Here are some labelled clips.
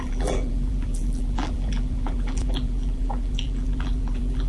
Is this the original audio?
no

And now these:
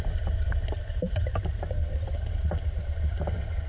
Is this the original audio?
yes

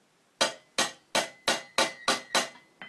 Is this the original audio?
yes